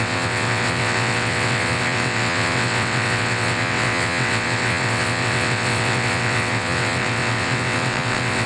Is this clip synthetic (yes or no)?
yes